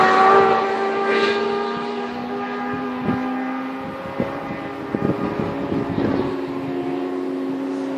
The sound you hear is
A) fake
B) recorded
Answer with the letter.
B